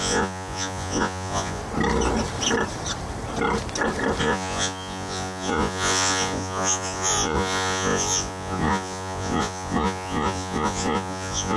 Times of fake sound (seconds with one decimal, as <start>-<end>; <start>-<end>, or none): 0.0-1.6; 4.2-11.6